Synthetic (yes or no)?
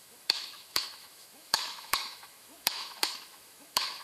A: yes